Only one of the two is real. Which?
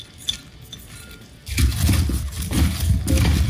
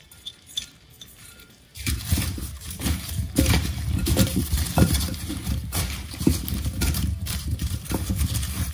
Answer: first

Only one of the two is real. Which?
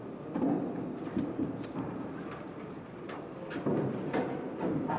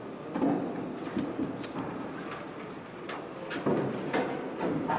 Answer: second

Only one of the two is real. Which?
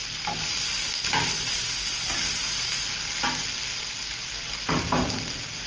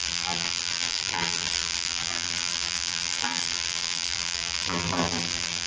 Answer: first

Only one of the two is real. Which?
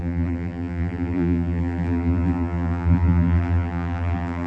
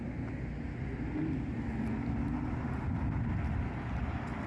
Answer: second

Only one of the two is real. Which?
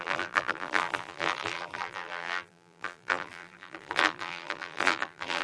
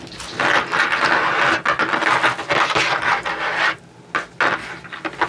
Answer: second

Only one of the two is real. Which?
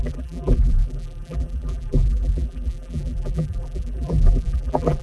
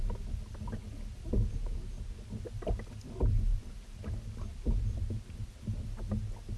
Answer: second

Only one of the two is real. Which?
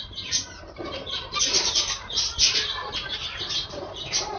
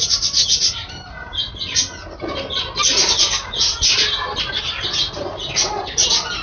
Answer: second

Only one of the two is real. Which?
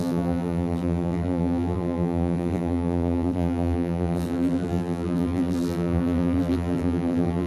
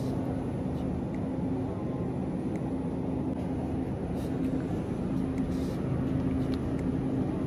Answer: second